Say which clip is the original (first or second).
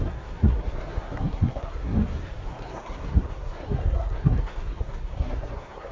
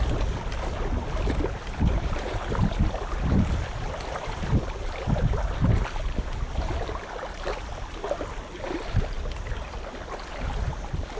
second